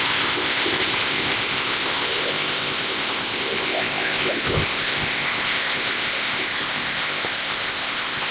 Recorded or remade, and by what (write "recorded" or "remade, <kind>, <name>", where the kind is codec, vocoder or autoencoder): remade, codec, ZipCodec